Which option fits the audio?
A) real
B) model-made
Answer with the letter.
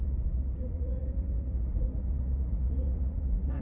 B